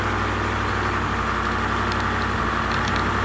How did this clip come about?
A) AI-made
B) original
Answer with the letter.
B